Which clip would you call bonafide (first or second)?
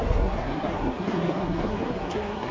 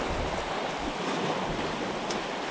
second